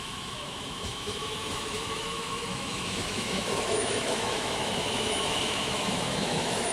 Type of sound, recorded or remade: remade